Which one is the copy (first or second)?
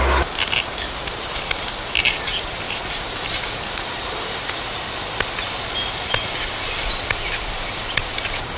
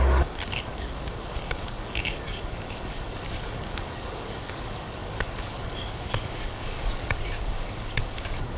second